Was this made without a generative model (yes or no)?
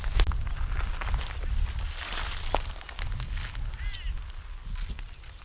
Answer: yes